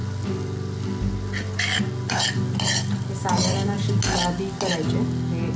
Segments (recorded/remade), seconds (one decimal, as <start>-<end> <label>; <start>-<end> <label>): 0.0-5.6 recorded